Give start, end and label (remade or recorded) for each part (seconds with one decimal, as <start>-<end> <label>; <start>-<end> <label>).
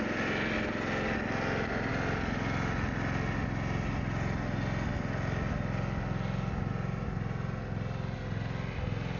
0.0-9.2 recorded